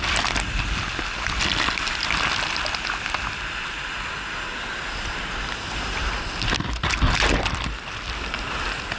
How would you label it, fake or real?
real